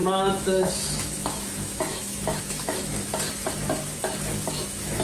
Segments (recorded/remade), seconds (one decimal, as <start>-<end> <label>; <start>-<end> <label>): 0.0-3.1 remade; 3.1-4.5 recorded; 4.5-5.0 remade